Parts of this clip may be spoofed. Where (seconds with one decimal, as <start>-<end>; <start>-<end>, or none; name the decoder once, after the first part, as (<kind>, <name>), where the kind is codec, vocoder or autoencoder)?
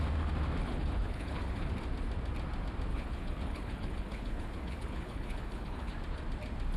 0.6-1.7 (codec, HILCodec); 2.9-5.9